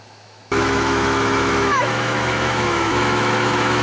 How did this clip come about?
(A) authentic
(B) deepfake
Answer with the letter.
B